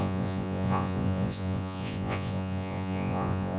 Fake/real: fake